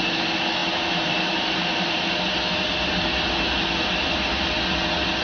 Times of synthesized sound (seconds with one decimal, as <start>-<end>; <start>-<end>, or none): 0.6-2.2